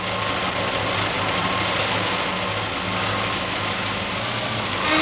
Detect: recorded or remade recorded